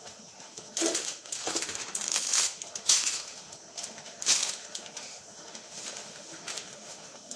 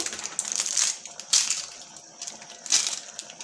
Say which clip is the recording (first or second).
second